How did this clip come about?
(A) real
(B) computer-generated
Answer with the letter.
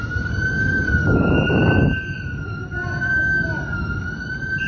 A